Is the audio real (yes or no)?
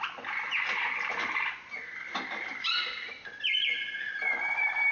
yes